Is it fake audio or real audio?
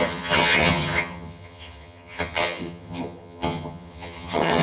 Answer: fake